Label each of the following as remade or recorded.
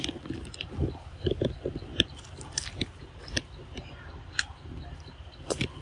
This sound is recorded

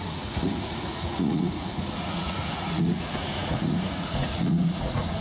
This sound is remade